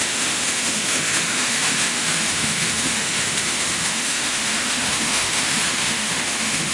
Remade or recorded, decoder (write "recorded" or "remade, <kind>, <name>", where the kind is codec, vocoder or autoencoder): remade, autoencoder, DAC-VAE